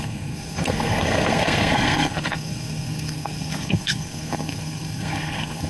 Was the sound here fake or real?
fake